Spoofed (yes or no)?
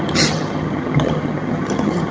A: yes